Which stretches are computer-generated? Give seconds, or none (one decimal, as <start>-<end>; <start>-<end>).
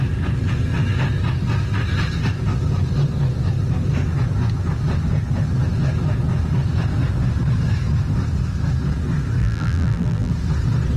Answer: 9.4-10.3